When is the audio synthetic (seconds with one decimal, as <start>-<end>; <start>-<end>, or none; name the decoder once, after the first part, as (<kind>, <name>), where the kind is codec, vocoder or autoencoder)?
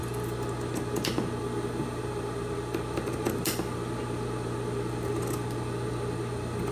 none